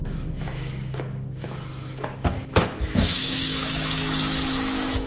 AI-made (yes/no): yes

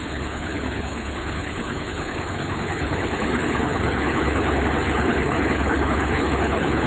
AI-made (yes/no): yes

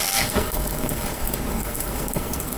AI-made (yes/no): yes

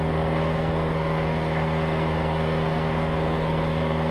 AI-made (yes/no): yes